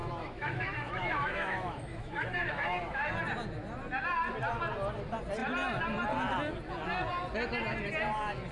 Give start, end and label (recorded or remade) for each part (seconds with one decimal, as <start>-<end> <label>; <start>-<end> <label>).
0.0-3.1 remade; 3.1-8.5 recorded